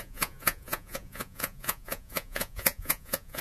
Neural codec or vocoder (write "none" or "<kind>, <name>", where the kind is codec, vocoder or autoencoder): vocoder, Vocos